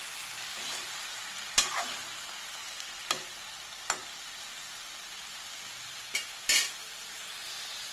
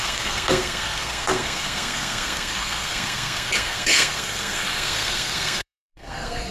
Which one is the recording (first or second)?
first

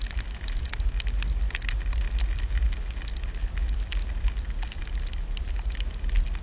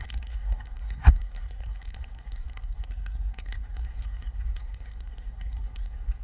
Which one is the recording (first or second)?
first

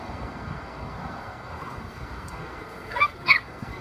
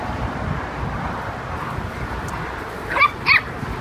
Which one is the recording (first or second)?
second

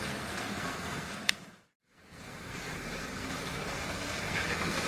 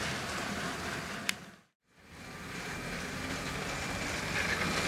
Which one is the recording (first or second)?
second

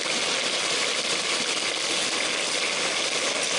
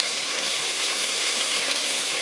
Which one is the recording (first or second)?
first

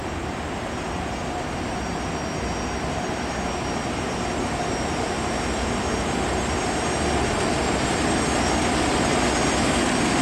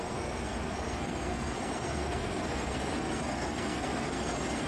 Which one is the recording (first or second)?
first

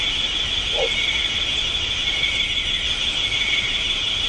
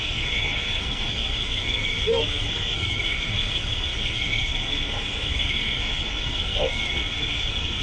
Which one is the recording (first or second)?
first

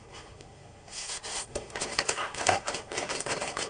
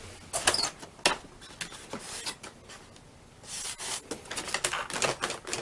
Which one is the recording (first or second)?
second